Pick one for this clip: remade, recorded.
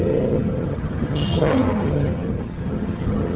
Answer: remade